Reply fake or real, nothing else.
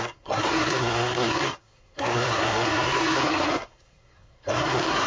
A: fake